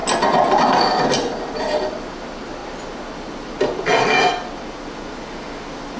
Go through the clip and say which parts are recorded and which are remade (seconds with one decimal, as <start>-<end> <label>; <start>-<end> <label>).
0.0-6.0 recorded